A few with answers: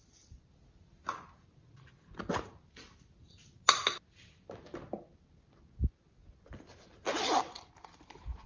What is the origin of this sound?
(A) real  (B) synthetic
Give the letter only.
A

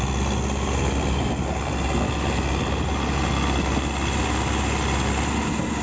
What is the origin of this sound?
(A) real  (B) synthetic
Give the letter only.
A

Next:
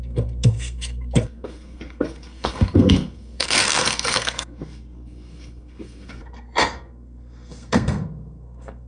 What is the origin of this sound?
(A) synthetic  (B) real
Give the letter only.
A